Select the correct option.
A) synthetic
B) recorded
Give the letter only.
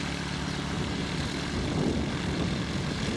B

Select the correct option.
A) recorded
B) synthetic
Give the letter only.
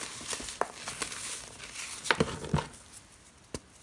A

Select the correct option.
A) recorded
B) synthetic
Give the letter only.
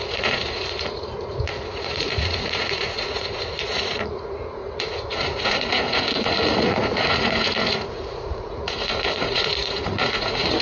B